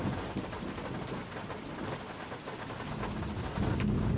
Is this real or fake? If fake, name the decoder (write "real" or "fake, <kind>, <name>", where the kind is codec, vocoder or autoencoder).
real